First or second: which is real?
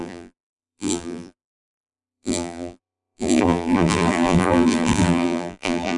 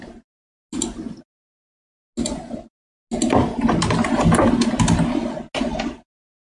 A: second